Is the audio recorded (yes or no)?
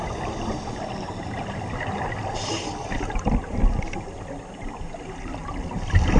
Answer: yes